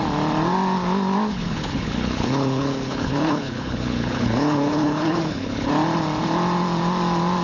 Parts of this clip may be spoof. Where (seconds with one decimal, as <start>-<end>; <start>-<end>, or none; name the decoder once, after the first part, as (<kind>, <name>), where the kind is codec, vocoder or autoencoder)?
1.3-5.7 (codec, HILCodec)